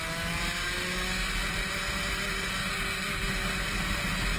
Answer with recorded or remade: recorded